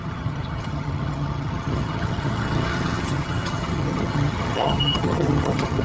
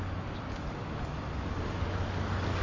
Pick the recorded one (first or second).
second